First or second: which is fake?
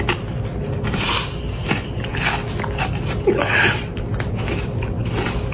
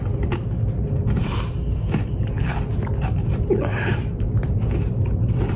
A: second